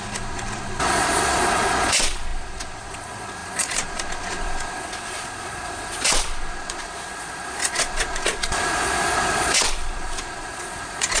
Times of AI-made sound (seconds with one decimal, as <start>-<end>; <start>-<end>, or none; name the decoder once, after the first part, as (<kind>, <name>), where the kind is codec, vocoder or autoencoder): 0.0-11.2 (vocoder, Vocos)